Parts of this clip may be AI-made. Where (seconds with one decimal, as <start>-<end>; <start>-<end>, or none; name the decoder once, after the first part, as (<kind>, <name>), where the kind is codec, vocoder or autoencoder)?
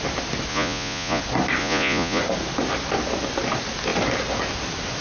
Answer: 0.5-1.2 (vocoder, Vocos); 1.6-2.2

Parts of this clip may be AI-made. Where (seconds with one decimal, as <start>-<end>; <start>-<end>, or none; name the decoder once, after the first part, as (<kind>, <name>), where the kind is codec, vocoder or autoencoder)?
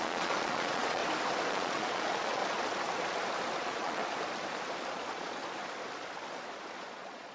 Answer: 0.0-1.0 (vocoder, Vocos); 1.5-2.4; 3.6-4.0; 4.9-5.4; 6.8-7.3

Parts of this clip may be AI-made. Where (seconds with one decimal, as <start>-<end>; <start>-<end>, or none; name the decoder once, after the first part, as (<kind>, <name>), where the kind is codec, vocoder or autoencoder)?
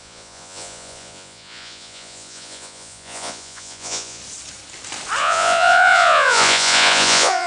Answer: 0.0-4.2 (vocoder, Vocos); 5.2-7.5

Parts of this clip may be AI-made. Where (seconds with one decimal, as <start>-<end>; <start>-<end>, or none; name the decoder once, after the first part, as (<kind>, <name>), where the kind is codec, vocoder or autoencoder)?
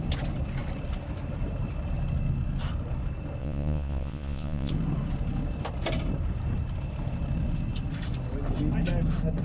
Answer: 3.4-4.7 (vocoder, Vocos)